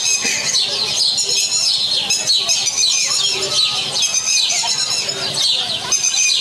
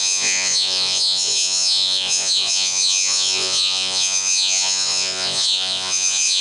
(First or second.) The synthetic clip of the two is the second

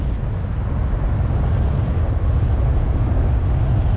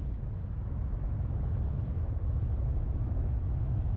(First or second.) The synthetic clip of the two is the second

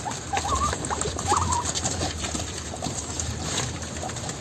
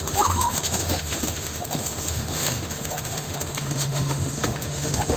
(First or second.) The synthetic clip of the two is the second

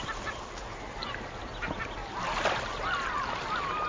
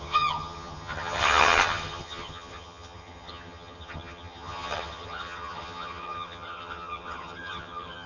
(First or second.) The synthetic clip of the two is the second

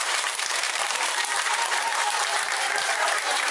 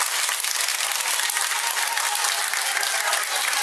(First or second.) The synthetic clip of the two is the first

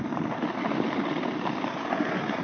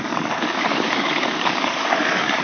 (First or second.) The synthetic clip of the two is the second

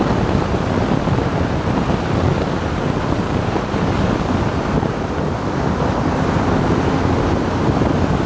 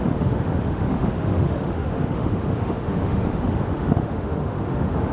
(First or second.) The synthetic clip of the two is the second